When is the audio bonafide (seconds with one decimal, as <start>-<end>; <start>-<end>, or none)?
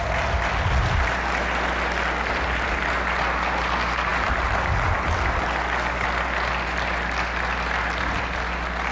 0.0-8.9